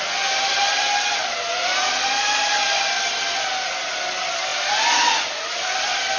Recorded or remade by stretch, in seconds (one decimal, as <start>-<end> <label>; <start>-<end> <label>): 0.0-6.2 recorded